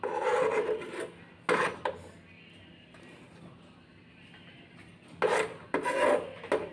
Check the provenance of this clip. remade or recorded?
recorded